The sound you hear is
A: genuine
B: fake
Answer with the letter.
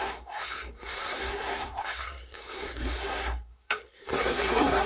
B